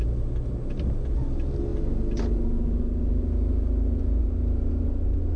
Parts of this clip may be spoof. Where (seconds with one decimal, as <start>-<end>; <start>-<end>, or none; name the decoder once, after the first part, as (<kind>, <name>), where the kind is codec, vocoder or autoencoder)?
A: none